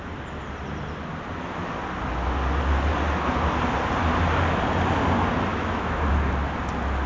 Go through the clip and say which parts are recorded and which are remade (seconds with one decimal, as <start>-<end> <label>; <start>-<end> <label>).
0.0-5.5 recorded; 5.5-6.1 remade; 6.1-7.1 recorded